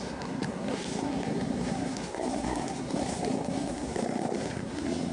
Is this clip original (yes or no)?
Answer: no